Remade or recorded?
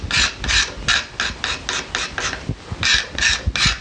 recorded